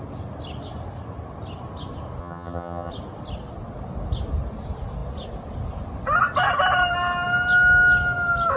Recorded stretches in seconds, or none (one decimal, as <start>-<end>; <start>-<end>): 0.0-2.2; 2.9-8.6

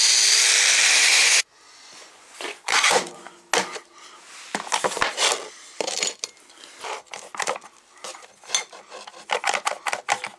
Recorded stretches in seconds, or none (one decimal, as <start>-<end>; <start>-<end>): 0.0-1.1; 3.4-10.4

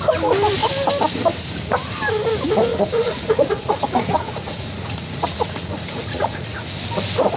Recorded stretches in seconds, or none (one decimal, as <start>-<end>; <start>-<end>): 0.0-2.7; 6.8-7.4

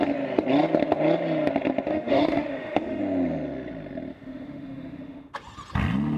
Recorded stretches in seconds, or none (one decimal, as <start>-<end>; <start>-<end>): 0.0-1.9; 3.0-4.1; 5.3-6.2

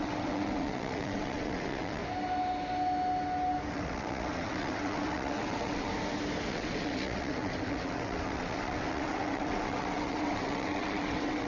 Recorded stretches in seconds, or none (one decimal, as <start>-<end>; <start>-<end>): 2.0-3.7; 5.9-6.5